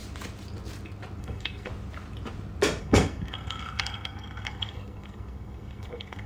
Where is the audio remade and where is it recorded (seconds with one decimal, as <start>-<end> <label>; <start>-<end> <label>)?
0.0-1.2 recorded; 1.2-1.7 remade; 1.7-2.8 recorded; 2.8-6.3 remade